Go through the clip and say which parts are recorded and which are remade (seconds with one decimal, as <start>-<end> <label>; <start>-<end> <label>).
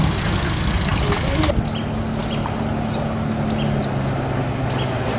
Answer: 0.0-5.2 recorded